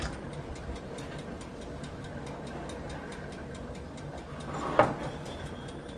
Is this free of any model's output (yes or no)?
yes